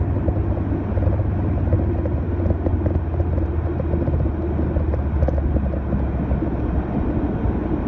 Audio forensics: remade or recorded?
recorded